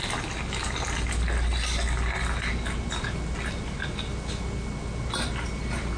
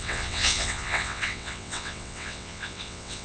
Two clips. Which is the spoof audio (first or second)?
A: second